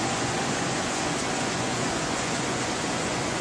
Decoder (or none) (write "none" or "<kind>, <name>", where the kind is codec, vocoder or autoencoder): vocoder, Vocos